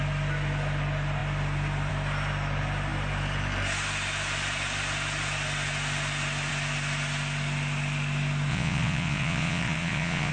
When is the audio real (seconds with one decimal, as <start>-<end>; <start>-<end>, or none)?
0.0-8.5